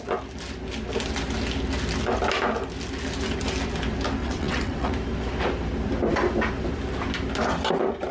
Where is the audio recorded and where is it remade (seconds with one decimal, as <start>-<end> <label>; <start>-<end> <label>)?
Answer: 0.0-4.2 recorded; 4.2-4.9 remade; 4.9-8.1 recorded